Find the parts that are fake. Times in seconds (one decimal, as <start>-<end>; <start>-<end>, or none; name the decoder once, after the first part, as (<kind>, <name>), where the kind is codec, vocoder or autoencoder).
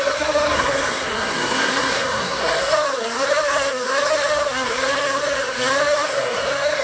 0.0-6.8 (codec, SNAC)